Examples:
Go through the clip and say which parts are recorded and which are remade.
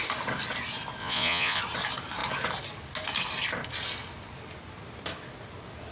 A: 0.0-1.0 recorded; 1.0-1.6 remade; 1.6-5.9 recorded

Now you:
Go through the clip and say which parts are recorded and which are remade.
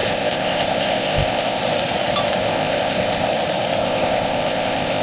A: 0.0-1.6 remade; 1.6-2.4 recorded; 2.4-3.3 remade; 3.3-3.8 recorded; 3.8-5.0 remade